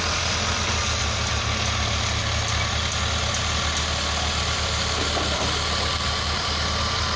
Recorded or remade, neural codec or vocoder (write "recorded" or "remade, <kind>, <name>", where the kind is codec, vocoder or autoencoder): recorded